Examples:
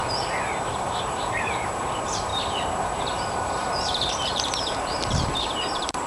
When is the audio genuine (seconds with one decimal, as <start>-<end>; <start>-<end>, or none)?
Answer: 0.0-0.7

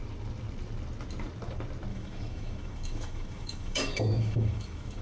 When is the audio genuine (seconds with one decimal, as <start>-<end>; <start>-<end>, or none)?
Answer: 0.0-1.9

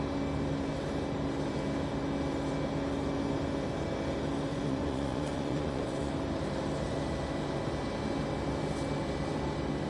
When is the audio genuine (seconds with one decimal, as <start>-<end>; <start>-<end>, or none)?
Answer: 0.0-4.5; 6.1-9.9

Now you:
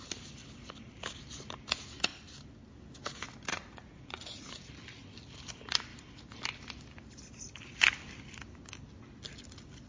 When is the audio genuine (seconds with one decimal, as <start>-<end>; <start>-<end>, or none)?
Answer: 0.0-3.5; 4.7-9.9